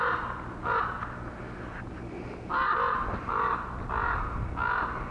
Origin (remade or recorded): recorded